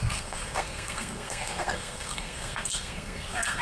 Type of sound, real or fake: fake